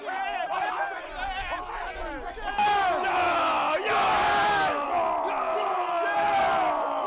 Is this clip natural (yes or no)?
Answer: yes